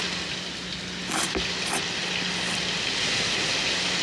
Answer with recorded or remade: recorded